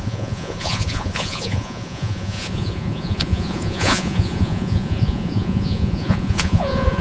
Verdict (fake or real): fake